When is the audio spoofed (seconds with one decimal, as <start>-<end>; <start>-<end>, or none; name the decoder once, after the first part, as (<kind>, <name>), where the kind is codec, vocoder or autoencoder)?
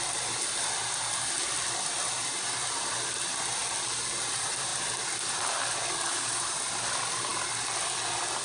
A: 0.0-3.6 (vocoder, BigVGAN v2); 4.3-7.3